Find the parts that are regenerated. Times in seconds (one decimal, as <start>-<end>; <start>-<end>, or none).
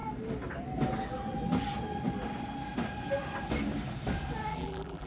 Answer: 4.5-5.1